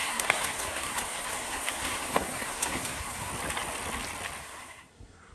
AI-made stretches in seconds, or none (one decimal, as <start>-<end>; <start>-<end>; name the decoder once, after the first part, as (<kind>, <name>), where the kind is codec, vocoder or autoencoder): 0.0-3.3 (codec, SNAC); 4.4-5.3